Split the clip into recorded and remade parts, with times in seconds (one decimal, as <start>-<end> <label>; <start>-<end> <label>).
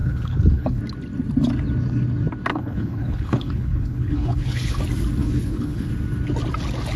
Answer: 0.0-0.8 remade; 0.8-2.5 recorded; 2.5-4.8 remade; 4.8-5.2 recorded; 5.2-5.9 remade; 5.9-7.0 recorded